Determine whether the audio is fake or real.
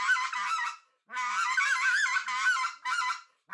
real